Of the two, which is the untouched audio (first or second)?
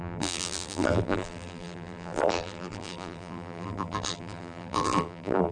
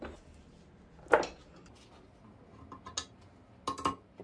second